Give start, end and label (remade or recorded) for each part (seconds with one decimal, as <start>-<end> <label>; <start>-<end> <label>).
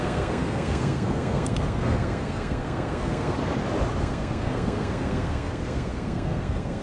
0.0-3.4 remade; 3.4-4.0 recorded; 4.0-6.8 remade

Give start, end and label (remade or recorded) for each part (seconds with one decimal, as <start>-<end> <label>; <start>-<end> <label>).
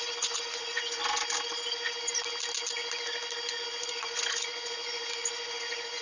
0.0-1.0 remade; 1.0-3.7 recorded; 3.7-6.0 remade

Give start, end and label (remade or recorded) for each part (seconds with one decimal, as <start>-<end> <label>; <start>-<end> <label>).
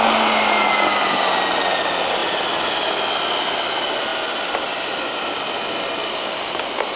0.0-7.0 recorded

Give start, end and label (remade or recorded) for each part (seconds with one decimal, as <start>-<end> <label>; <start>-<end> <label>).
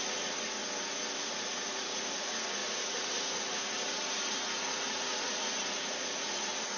0.0-0.6 remade; 0.6-1.2 recorded; 1.2-6.8 remade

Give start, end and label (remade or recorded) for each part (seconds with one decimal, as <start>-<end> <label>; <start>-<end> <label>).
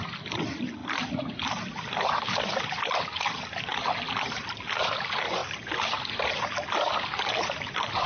0.0-8.1 recorded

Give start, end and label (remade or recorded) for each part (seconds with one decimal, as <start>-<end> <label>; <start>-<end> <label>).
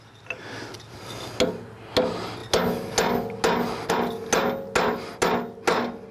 0.0-6.1 recorded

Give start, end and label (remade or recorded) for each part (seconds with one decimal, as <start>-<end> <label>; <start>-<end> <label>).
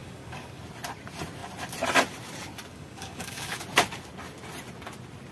0.0-0.6 remade; 0.6-2.7 recorded; 2.7-3.6 remade; 3.6-5.3 recorded